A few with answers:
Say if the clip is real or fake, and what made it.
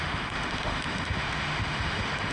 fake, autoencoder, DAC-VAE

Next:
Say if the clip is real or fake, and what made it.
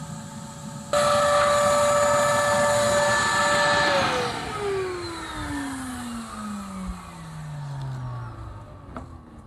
real